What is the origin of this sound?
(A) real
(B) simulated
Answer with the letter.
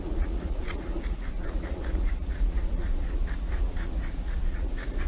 B